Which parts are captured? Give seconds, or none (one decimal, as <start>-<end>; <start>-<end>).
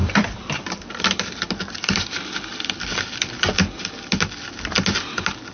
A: 3.3-5.5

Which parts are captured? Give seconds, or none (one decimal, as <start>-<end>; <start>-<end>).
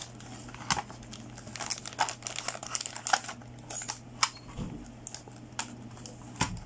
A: 0.0-6.7